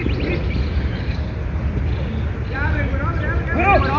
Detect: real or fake real